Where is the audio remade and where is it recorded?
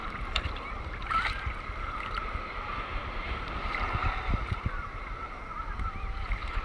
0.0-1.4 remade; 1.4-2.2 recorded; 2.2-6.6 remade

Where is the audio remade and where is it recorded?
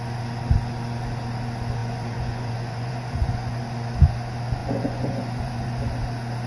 0.0-1.8 recorded; 1.8-3.6 remade; 3.6-4.6 recorded; 4.6-5.9 remade; 5.9-6.5 recorded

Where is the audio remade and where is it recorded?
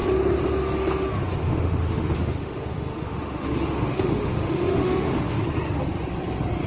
0.0-1.4 recorded; 1.4-5.4 remade; 5.4-6.7 recorded